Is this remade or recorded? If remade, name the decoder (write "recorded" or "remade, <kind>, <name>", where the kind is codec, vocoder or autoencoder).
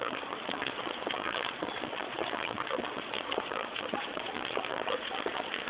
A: remade, vocoder, Vocos